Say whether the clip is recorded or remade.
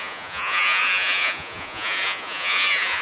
remade